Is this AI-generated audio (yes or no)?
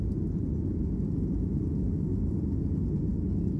no